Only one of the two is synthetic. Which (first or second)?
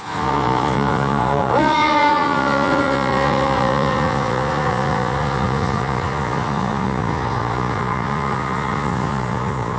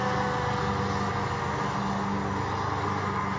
first